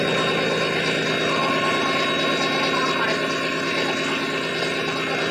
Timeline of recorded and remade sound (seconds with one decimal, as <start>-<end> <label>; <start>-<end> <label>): 0.0-5.3 recorded